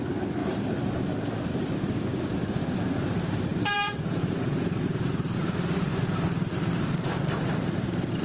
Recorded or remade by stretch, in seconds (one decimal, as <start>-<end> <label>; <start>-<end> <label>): 0.0-0.4 recorded; 0.4-1.5 remade; 1.5-3.5 recorded; 3.5-8.2 remade